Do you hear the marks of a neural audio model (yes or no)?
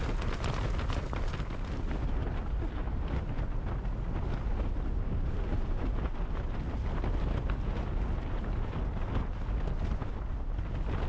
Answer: no